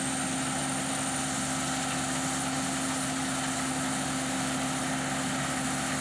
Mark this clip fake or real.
real